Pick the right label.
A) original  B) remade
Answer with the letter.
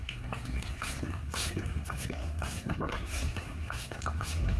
B